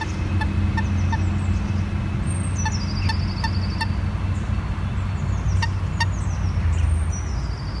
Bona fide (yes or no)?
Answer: yes